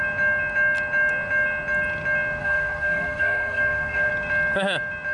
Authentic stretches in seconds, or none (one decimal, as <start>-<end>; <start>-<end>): 0.0-2.4; 4.1-5.1